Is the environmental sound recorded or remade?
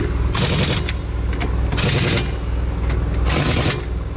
recorded